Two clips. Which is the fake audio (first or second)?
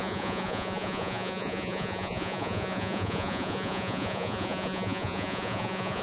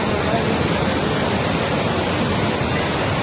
first